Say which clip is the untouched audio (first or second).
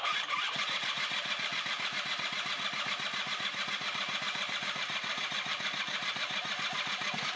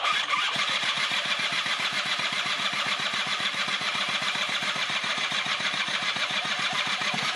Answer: first